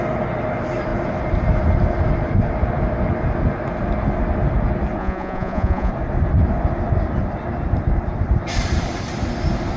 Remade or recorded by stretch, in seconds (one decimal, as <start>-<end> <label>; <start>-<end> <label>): 0.0-5.0 recorded; 5.0-5.9 remade; 5.9-9.8 recorded